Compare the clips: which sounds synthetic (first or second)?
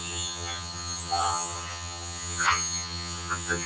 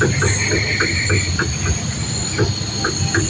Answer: first